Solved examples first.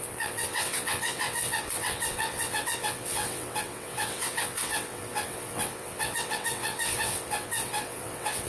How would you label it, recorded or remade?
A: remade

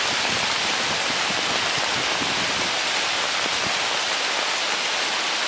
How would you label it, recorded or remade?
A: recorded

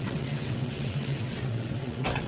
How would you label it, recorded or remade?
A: remade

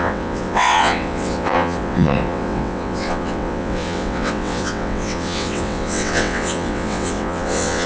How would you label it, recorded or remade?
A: remade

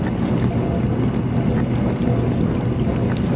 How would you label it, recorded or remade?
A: recorded